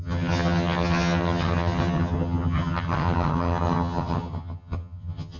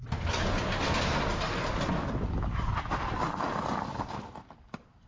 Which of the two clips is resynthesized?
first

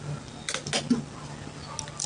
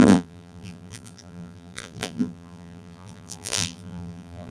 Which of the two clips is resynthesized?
second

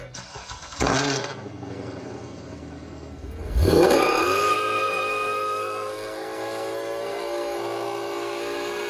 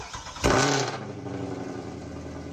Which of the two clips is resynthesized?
first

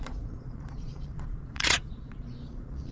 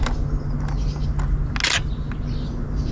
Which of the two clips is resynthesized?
first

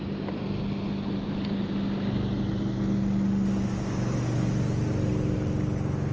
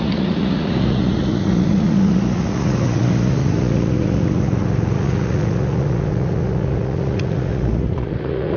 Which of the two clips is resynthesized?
second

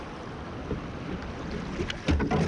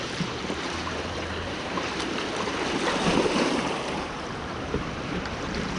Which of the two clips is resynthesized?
second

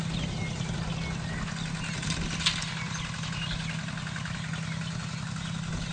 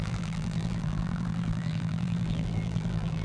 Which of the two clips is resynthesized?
second